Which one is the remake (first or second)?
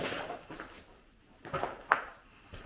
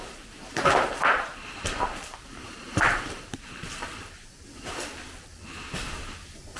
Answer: second